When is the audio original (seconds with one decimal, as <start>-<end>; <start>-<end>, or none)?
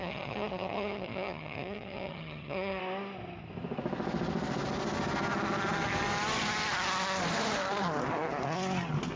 2.8-9.2